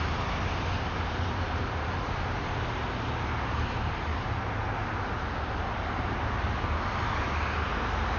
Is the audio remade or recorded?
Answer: recorded